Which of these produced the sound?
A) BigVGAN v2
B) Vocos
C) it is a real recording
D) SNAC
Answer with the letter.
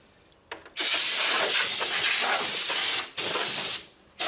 C